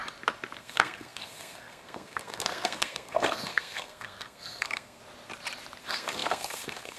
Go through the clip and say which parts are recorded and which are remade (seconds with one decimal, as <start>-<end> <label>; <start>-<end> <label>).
0.0-0.6 recorded; 0.6-5.0 remade; 5.0-5.8 recorded; 5.8-7.0 remade